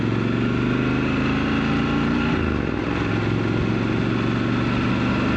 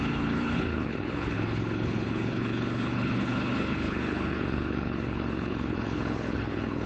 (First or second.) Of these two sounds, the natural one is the first